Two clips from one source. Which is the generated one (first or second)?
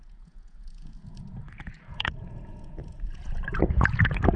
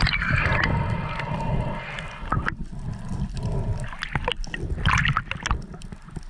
first